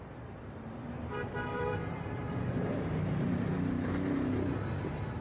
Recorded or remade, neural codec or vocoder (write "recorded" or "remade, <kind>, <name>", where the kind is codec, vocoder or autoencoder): remade, vocoder, BigVGAN v2